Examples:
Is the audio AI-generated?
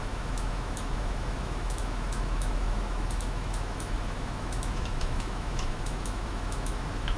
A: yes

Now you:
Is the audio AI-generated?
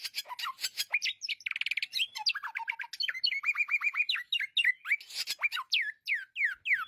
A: no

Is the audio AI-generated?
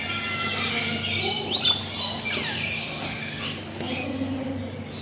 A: no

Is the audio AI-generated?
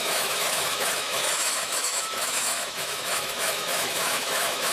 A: yes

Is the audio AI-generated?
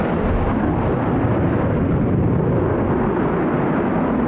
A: no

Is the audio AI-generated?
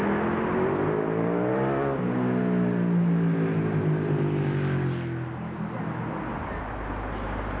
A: no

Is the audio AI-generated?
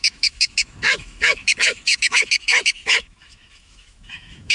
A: yes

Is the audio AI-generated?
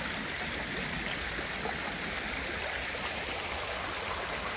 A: no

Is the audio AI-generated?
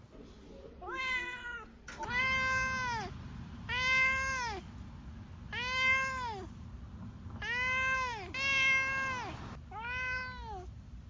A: no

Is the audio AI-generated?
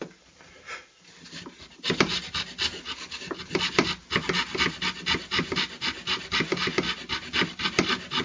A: no